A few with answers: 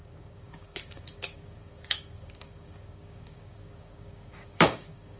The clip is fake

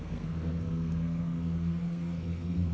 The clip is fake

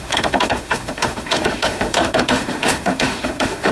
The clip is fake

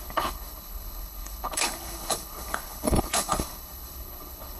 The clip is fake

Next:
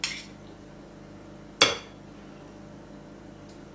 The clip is real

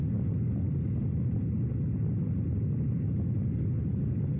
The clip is real